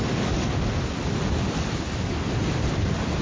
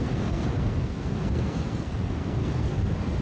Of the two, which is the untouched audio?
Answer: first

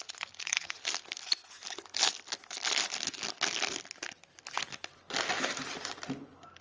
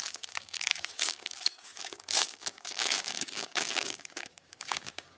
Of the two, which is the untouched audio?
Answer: first